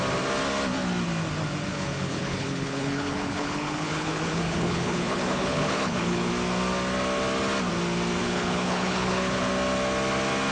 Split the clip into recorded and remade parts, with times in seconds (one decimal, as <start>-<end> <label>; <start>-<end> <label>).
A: 0.0-1.7 recorded; 1.7-6.3 remade; 6.3-8.2 recorded; 8.2-9.5 remade; 9.5-10.5 recorded